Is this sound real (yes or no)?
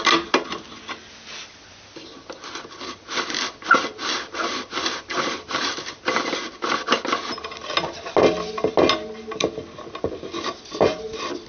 yes